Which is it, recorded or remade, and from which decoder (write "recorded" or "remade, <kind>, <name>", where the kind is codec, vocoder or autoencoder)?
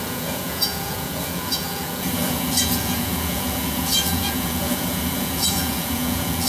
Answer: remade, vocoder, Vocos